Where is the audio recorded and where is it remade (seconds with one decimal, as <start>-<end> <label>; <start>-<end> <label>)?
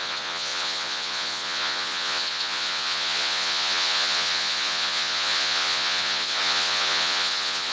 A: 0.0-7.7 remade